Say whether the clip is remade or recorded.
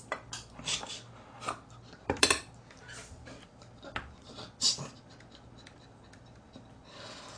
recorded